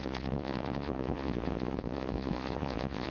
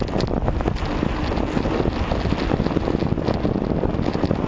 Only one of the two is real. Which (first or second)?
second